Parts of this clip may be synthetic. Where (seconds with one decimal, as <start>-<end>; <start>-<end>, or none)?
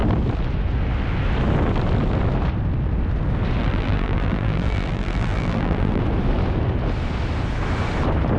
3.6-6.0